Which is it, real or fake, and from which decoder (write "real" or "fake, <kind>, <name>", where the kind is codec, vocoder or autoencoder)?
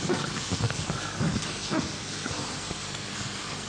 fake, codec, SNAC